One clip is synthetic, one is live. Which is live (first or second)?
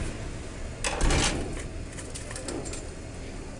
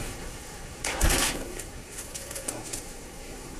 first